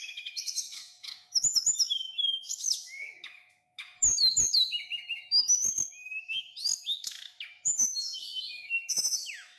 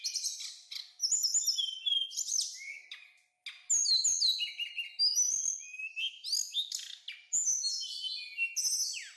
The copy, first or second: first